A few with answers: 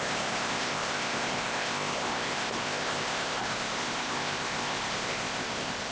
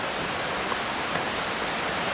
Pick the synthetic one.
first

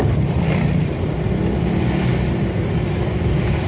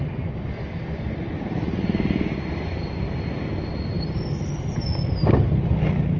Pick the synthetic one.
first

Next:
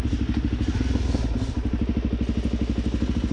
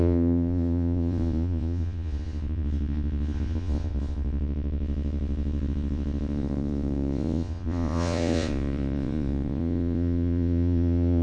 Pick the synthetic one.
second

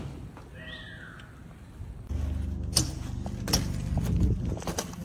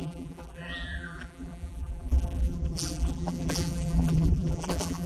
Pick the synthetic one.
second